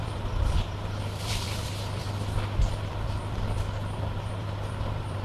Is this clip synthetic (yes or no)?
yes